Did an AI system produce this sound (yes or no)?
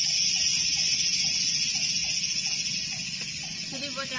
no